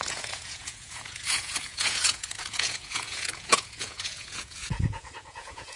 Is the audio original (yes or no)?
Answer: no